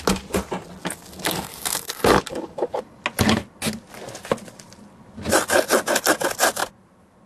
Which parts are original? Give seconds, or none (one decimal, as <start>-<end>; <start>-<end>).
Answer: 0.0-0.8; 2.8-7.3